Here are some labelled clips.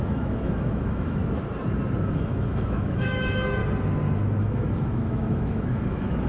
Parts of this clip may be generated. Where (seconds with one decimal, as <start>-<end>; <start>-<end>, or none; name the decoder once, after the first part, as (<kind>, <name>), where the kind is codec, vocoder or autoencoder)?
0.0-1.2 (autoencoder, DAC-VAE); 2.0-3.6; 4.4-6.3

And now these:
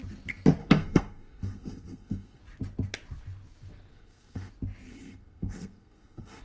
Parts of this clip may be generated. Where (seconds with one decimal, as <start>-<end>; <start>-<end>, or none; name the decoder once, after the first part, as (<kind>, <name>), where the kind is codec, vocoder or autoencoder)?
0.6-2.4 (codec, SNAC); 3.9-4.5; 4.9-6.4

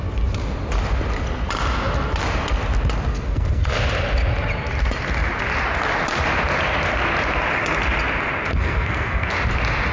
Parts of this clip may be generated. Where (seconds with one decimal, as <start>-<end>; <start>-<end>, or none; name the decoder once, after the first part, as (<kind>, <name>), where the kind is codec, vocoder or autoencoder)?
3.1-3.7 (codec, SNAC); 8.5-9.3